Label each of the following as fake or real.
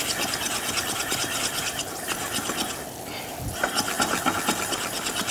real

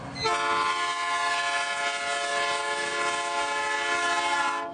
real